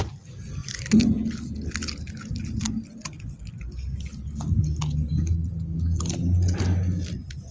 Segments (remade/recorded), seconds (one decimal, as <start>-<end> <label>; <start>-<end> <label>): 0.0-7.5 recorded